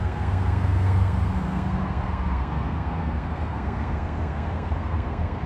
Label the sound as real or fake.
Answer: fake